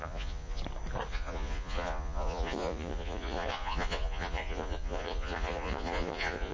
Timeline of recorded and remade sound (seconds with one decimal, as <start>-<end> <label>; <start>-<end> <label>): 0.0-0.6 remade; 0.6-1.1 recorded; 1.1-6.5 remade